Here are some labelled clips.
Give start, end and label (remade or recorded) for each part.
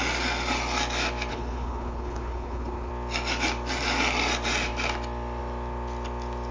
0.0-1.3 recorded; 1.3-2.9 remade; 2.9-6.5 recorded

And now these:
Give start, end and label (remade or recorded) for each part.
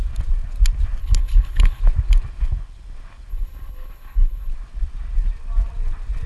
0.0-1.0 recorded; 1.0-1.8 remade; 1.8-3.3 recorded; 3.3-4.5 remade; 4.5-6.3 recorded